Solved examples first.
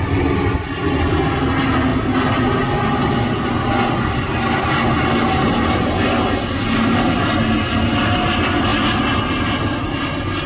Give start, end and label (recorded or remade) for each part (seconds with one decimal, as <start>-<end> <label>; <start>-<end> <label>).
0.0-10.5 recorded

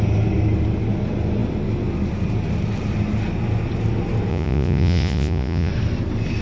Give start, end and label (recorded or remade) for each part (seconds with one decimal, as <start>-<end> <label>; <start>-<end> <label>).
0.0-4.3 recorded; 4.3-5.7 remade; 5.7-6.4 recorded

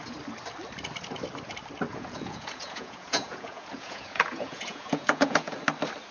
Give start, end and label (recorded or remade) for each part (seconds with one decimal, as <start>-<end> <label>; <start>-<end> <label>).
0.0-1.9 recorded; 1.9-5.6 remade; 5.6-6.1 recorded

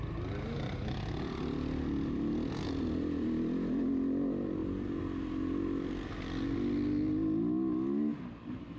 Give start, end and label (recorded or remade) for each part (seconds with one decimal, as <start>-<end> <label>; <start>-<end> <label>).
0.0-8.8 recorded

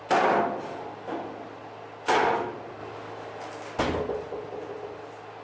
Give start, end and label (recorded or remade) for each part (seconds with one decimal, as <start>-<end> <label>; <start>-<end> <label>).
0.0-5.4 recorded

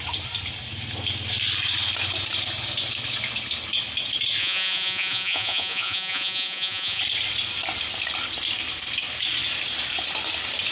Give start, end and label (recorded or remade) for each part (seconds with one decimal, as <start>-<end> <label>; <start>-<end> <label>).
0.0-4.4 recorded; 4.4-7.0 remade; 7.0-10.7 recorded